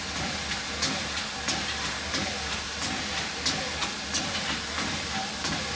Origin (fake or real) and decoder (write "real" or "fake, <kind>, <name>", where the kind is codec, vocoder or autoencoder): real